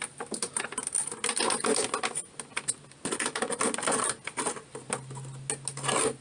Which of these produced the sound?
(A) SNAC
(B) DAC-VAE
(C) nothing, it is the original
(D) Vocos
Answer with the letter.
C